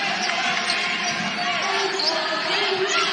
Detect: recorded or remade recorded